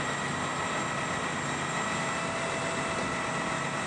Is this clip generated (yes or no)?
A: no